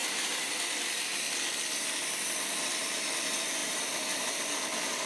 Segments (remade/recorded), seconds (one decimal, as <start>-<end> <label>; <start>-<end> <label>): 0.0-0.5 remade; 0.5-3.6 recorded; 3.6-4.4 remade; 4.4-5.1 recorded